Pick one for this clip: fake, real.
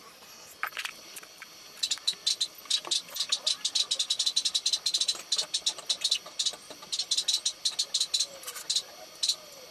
real